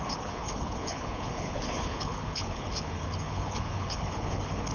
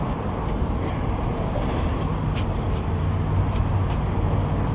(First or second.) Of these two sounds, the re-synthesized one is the first